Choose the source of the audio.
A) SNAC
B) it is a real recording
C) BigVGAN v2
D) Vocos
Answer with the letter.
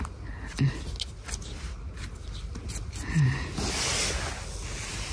B